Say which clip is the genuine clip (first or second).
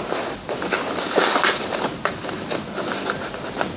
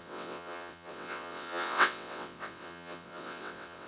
first